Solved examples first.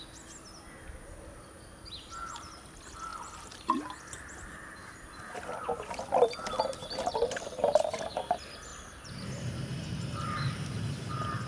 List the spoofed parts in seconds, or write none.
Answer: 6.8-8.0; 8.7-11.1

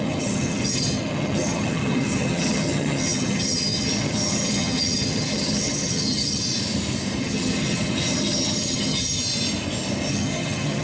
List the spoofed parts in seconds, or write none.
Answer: 0.0-6.4; 7.2-9.2; 10.1-10.8

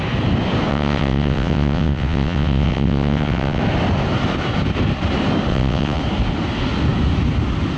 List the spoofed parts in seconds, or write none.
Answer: 0.7-3.6; 5.5-6.0

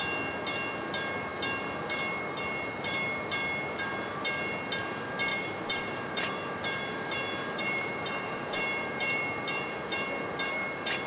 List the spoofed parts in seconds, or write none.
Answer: 5.3-9.7

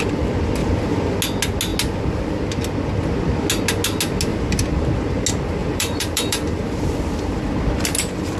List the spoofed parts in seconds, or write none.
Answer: 0.6-1.1; 4.3-4.9; 5.6-7.0

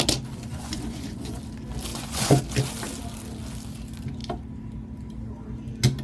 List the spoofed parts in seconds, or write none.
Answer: 0.5-1.4; 1.9-2.4